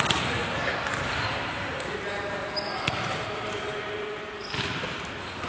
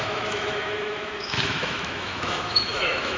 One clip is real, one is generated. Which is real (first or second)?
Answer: first